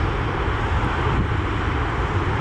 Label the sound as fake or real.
real